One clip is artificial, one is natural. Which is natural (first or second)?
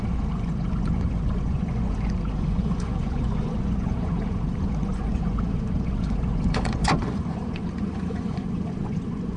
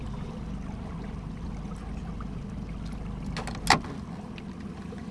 second